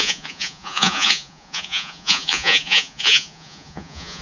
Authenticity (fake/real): fake